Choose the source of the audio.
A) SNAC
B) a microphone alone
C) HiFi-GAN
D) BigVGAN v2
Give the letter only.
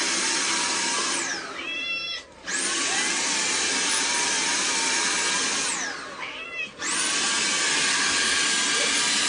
B